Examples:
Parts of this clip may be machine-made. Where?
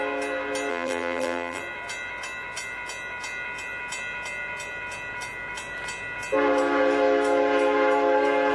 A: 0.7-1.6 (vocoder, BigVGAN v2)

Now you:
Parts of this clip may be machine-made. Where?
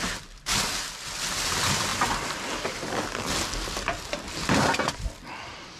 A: none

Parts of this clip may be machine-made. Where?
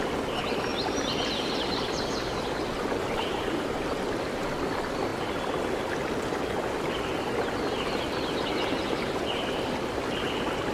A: none